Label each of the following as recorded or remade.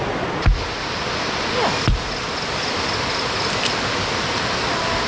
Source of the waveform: recorded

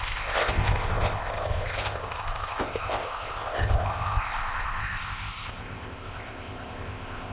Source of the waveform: remade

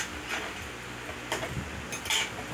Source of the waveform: recorded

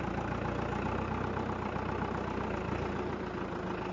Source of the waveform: recorded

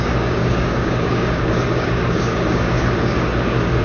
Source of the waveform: remade